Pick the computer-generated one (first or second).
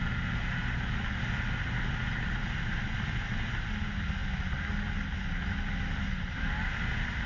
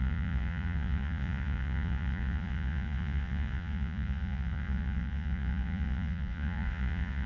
second